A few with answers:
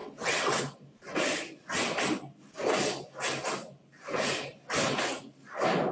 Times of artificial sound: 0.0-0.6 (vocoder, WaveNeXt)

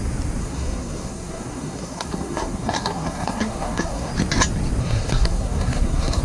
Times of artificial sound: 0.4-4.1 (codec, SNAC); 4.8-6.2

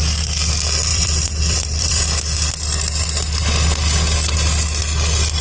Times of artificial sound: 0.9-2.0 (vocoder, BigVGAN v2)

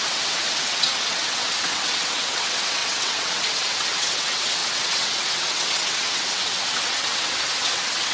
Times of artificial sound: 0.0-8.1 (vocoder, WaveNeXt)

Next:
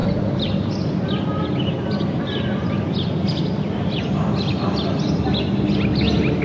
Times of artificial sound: none

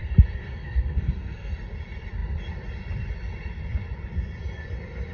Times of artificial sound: 0.4-1.5 (codec, SNAC)

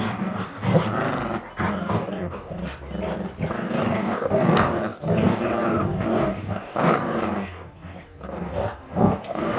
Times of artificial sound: 0.0-0.7 (codec, DAC); 1.7-2.6; 3.5-9.6